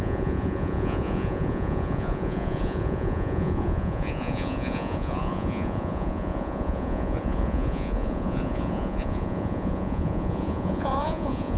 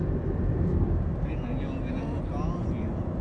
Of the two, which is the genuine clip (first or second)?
second